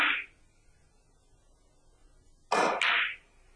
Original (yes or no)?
yes